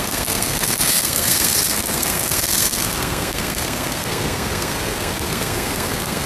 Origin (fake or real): fake